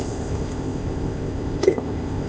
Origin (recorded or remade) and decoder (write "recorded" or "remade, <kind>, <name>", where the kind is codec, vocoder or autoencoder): remade, codec, ZipCodec